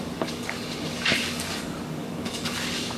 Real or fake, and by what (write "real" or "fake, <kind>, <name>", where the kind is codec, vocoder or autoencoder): fake, codec, DAC